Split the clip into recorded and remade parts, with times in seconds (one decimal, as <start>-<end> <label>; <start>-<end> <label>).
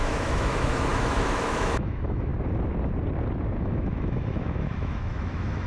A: 0.0-2.3 remade; 2.3-3.6 recorded; 3.6-5.7 remade